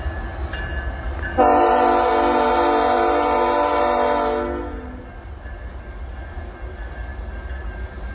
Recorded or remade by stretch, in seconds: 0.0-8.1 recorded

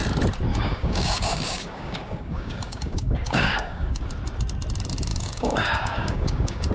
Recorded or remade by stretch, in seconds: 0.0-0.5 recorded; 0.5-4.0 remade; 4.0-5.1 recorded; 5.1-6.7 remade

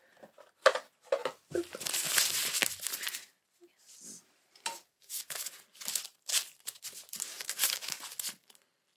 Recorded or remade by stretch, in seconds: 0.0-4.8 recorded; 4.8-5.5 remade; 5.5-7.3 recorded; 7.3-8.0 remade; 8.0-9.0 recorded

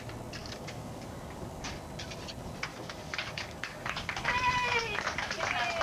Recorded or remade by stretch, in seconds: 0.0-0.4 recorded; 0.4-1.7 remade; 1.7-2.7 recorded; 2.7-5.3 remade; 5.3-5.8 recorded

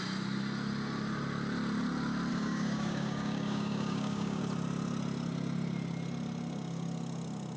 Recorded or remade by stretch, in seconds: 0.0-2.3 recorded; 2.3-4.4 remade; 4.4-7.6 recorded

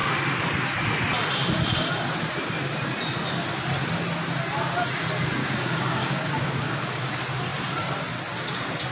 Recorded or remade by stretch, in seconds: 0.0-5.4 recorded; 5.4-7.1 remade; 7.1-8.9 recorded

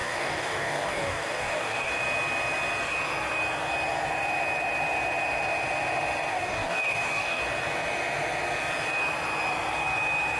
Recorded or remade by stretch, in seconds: 0.0-1.9 remade; 1.9-6.3 recorded; 6.3-7.4 remade; 7.4-10.4 recorded